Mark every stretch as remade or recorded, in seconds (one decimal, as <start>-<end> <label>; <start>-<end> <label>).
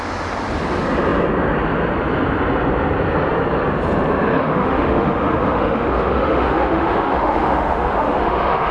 0.0-4.4 recorded; 4.4-8.7 remade